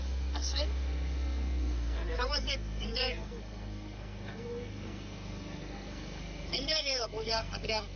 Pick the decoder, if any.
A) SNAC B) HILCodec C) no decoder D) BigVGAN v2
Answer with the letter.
A